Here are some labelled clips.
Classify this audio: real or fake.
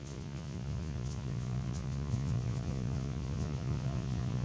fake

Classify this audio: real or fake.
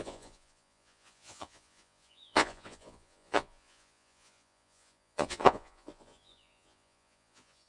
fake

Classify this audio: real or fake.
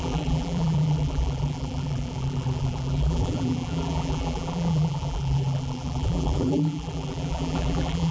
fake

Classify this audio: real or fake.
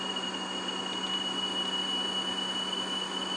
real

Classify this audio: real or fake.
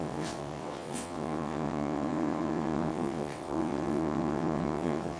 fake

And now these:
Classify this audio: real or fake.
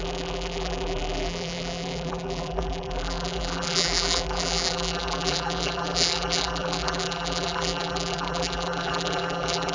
fake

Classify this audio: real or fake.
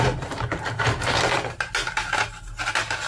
real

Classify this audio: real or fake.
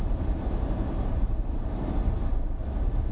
real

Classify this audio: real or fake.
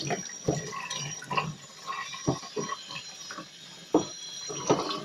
real